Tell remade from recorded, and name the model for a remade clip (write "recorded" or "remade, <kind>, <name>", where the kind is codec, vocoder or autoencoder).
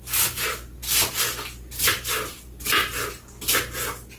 recorded